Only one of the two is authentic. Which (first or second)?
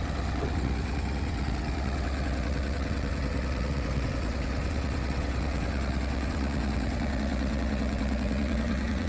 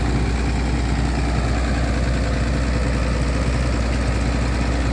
second